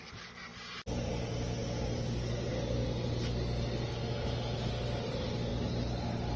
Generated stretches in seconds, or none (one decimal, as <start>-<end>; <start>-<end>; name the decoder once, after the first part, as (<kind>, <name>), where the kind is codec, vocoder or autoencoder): 4.0-4.7 (autoencoder, DAC-VAE)